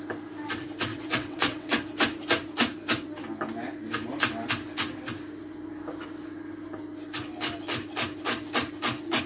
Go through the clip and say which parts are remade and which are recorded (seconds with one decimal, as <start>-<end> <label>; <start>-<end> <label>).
0.0-0.9 recorded; 0.9-1.8 remade; 1.8-9.3 recorded